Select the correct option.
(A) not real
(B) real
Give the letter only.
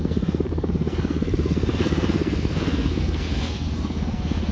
A